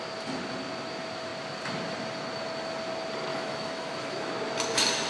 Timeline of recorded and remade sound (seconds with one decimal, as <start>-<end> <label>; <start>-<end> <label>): 0.0-3.3 recorded; 3.3-4.3 remade; 4.3-5.1 recorded